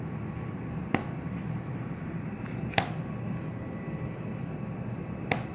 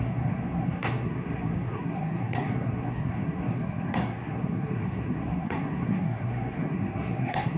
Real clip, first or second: first